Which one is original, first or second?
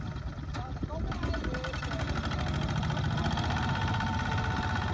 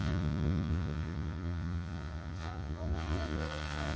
first